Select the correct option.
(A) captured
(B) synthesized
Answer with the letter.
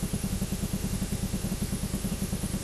B